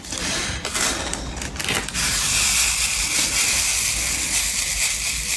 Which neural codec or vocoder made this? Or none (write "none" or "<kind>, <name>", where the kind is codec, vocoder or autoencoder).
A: none